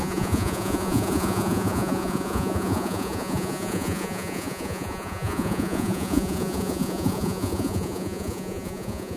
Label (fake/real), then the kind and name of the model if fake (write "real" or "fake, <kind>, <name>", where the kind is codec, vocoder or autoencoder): fake, vocoder, Vocos